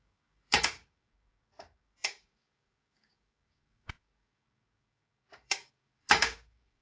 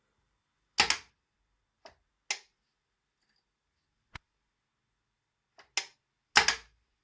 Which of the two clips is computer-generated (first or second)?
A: first